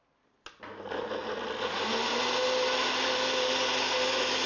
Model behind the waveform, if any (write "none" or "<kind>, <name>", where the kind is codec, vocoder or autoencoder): none